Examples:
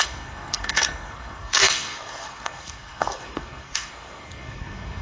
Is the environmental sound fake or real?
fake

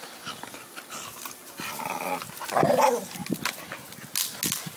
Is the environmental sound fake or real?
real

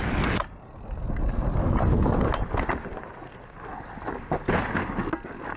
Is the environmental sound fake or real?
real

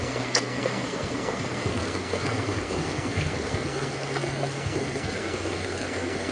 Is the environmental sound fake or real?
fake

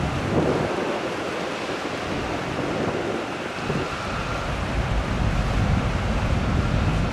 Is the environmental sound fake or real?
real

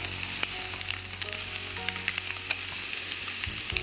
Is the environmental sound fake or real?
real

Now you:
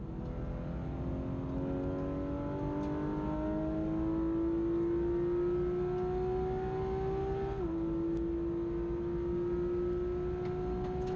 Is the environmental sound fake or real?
real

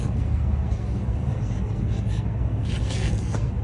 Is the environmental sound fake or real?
fake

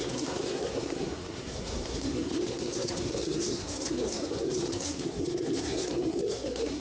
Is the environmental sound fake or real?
fake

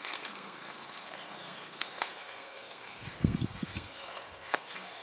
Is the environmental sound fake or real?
fake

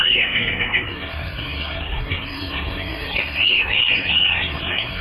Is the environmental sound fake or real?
fake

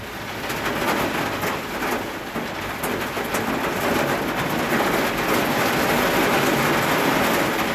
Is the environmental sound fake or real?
real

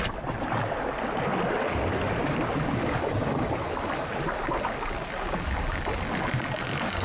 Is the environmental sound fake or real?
real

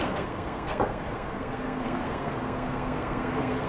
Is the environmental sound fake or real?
fake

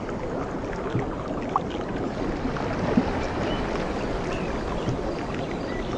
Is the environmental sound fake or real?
real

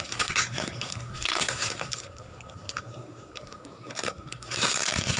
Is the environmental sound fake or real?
fake